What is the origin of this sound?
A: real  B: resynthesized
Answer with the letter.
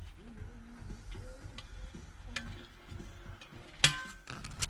A